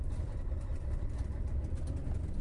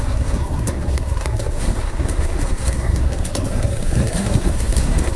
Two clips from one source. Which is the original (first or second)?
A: first